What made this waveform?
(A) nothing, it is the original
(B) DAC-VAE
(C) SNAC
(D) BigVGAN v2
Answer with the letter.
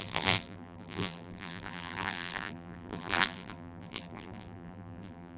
D